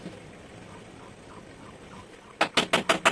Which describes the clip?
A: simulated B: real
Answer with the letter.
B